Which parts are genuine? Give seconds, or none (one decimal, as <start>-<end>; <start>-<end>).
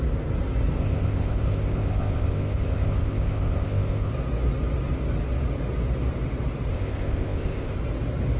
0.0-0.8; 4.1-6.7; 7.8-8.4